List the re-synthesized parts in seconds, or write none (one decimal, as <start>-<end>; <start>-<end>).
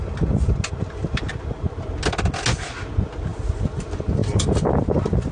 none